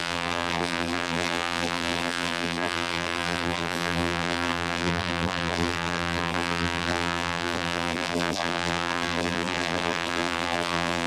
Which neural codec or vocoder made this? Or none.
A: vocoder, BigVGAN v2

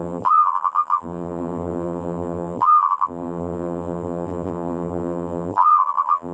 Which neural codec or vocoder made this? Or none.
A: vocoder, BigVGAN v2